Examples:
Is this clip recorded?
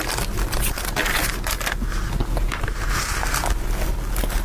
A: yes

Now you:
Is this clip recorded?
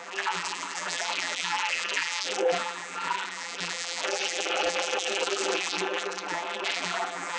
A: no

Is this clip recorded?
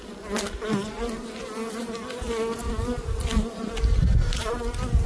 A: yes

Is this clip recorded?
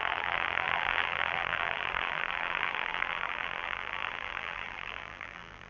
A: no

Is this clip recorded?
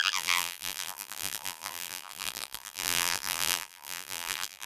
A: no